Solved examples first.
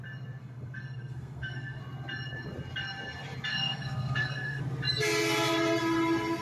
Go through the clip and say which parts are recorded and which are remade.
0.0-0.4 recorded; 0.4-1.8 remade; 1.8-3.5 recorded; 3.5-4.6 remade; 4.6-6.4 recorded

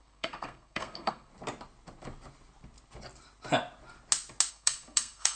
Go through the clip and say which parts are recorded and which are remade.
0.0-1.3 remade; 1.3-4.5 recorded; 4.5-5.4 remade